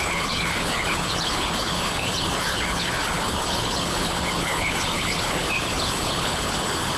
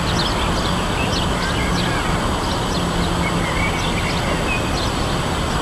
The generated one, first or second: first